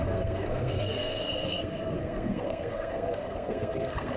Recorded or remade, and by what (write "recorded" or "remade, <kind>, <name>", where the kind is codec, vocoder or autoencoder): remade, codec, SNAC